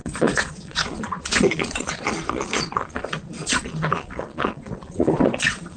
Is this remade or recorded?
remade